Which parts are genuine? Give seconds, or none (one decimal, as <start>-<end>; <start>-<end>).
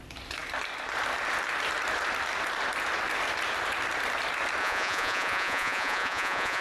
0.0-4.6